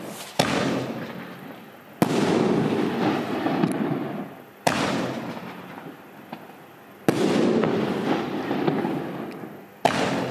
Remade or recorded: recorded